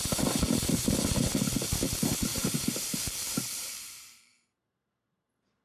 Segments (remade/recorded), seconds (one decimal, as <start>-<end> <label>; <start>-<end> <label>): 0.0-2.3 recorded; 2.3-5.6 remade